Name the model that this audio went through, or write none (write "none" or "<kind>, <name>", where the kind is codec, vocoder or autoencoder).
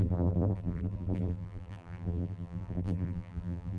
vocoder, BigVGAN v2